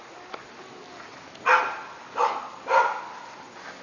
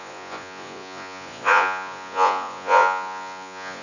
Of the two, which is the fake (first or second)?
second